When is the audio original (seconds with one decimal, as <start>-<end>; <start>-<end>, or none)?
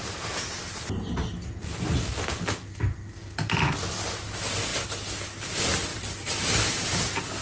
0.0-1.6; 2.1-5.9; 7.0-7.4